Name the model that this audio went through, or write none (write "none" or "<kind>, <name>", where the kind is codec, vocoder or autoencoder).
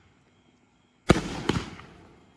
none